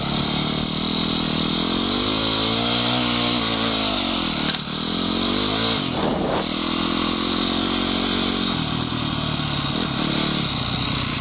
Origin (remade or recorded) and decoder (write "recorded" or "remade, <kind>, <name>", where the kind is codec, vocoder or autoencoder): recorded